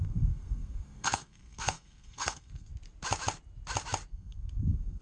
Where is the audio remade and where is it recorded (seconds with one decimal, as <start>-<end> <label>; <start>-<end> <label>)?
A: 0.0-2.7 remade; 2.7-4.1 recorded; 4.1-5.0 remade

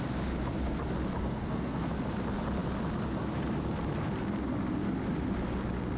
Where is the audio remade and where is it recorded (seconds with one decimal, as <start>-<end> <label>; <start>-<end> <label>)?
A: 0.0-1.2 recorded; 1.2-1.9 remade; 1.9-6.0 recorded

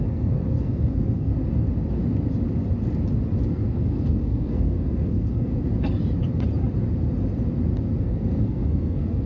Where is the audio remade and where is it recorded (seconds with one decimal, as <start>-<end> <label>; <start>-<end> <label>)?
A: 0.0-1.3 remade; 1.3-3.5 recorded; 3.5-5.5 remade; 5.5-8.0 recorded; 8.0-9.3 remade

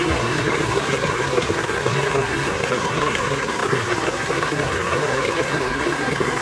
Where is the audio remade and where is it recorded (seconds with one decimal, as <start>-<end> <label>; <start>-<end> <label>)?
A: 0.0-6.4 remade

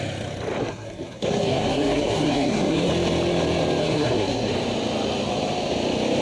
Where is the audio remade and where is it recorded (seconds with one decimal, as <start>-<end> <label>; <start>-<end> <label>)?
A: 0.0-0.6 recorded; 0.6-2.9 remade; 2.9-3.8 recorded; 3.8-4.5 remade; 4.5-6.2 recorded